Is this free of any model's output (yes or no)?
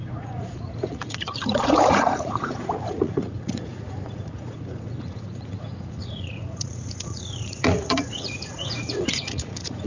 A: no